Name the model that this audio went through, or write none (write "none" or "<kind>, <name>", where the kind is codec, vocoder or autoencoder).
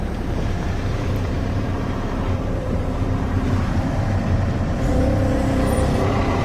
vocoder, BigVGAN v2